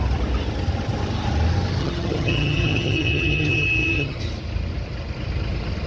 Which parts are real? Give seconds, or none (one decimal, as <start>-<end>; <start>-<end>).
0.0-1.8; 4.2-5.9